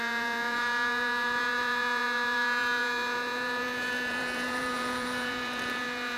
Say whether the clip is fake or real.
fake